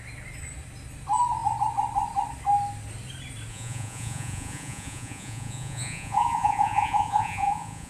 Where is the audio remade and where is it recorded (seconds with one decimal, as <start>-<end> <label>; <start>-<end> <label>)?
0.0-3.5 recorded; 3.5-7.9 remade